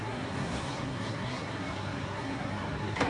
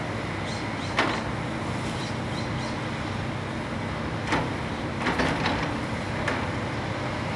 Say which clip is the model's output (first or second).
first